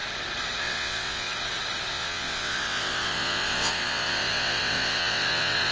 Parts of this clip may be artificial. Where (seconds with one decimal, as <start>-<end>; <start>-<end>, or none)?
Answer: 0.6-1.3; 1.9-5.7